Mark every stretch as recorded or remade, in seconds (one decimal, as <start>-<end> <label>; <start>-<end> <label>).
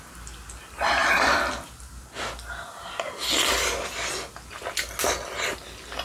0.0-6.0 recorded